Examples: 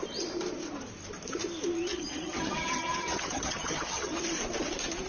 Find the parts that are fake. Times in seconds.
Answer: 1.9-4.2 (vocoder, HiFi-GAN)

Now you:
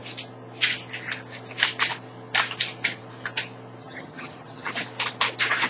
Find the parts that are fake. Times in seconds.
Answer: 3.8-4.7 (vocoder, HiFi-GAN)